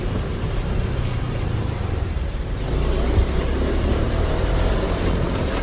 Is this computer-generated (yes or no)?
yes